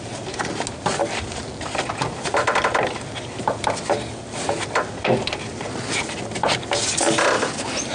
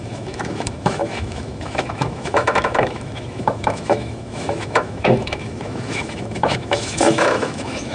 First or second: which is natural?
first